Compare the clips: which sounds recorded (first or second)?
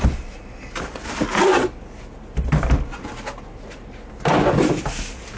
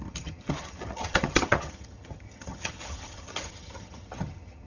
first